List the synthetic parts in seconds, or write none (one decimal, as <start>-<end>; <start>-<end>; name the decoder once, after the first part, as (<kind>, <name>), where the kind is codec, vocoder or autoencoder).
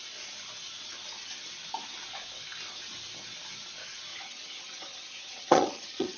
4.1-6.2 (vocoder, HiFi-GAN)